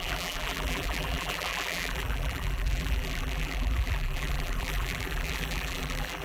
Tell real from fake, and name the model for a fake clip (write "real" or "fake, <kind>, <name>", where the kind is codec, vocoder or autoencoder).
fake, vocoder, BigVGAN v2